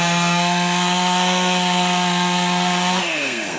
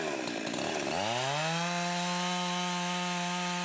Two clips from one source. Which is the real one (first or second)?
second